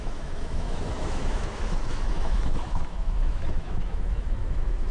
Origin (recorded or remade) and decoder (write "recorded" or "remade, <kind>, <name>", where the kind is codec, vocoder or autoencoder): remade, autoencoder, DAC-VAE